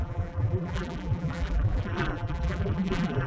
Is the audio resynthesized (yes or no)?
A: yes